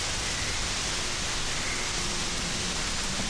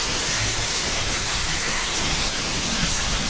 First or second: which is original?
first